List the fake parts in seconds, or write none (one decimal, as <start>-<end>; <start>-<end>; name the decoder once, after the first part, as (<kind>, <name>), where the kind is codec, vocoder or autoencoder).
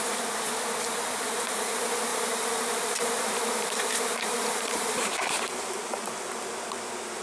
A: 2.1-6.4 (vocoder, BigVGAN v2)